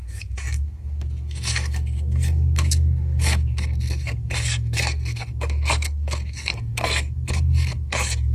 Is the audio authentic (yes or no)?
no